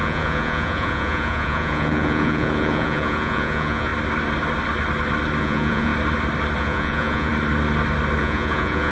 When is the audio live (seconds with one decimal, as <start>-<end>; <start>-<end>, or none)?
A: 3.9-5.4; 5.9-6.6; 7.3-8.2